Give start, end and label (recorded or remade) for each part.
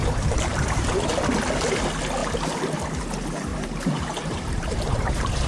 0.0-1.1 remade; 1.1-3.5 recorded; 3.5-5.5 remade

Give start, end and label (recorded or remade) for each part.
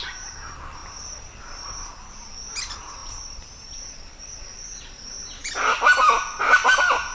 0.0-3.0 recorded; 3.0-5.5 remade; 5.5-7.1 recorded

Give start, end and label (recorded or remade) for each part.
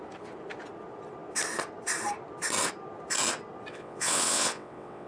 0.0-3.7 recorded; 3.7-5.1 remade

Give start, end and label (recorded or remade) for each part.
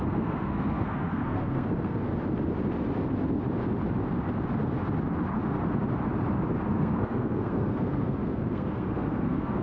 0.0-2.1 remade; 2.1-6.7 recorded; 6.7-9.6 remade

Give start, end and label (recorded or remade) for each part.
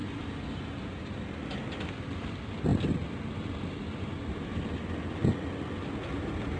0.0-6.6 recorded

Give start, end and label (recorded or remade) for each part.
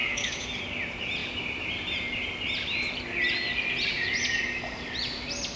0.0-0.6 remade; 0.6-5.6 recorded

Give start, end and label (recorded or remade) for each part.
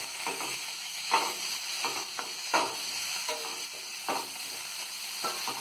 0.0-3.5 remade; 3.5-5.6 recorded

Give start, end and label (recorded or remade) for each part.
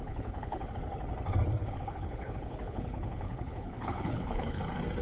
0.0-0.7 remade; 0.7-1.6 recorded; 1.6-4.6 remade; 4.6-5.0 recorded